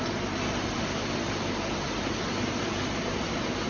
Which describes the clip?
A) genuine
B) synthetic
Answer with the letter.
B